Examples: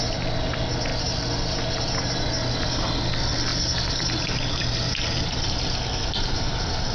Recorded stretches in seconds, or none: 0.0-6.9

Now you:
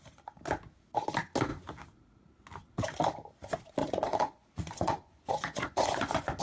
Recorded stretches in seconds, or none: 0.0-3.8

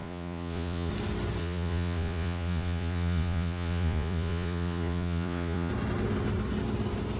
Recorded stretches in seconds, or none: 0.9-1.4; 5.7-7.2

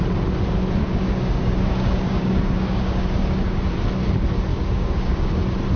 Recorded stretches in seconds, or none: 0.0-0.8; 3.6-4.5; 5.3-5.8

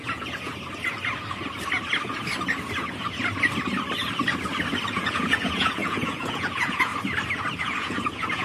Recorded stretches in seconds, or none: 0.5-4.9; 6.9-7.6

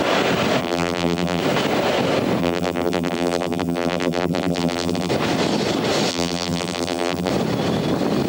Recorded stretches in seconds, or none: 0.0-0.6; 1.4-2.4; 5.1-6.1; 7.3-8.3

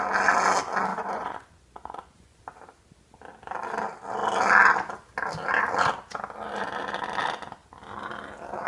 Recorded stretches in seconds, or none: 0.0-0.9; 2.4-8.7